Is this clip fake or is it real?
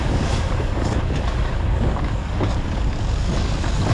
fake